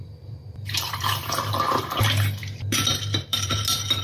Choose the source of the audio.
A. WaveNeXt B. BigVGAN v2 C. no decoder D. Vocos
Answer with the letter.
B